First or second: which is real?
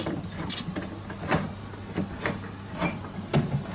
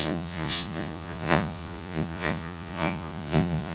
first